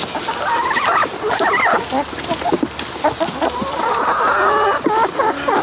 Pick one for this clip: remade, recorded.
recorded